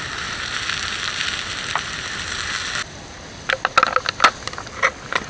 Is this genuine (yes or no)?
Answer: yes